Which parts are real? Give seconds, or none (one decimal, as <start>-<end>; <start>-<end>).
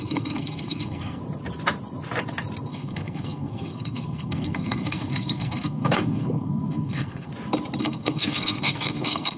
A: 1.2-2.7; 7.3-7.8